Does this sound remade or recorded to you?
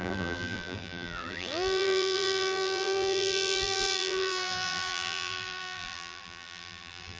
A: remade